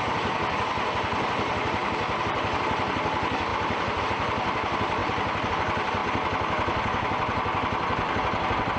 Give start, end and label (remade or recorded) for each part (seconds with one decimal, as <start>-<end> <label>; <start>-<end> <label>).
0.0-6.0 remade; 6.0-8.8 recorded